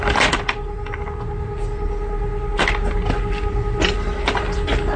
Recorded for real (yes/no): yes